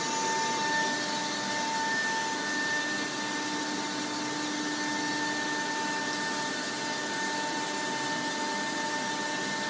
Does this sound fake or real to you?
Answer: real